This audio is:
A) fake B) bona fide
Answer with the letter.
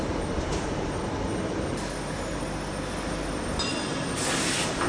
B